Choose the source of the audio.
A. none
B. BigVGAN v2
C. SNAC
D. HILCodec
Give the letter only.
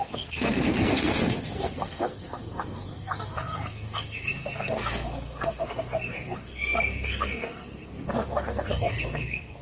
C